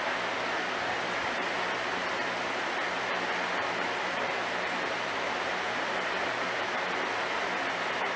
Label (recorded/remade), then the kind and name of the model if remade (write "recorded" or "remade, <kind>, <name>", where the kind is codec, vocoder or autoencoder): recorded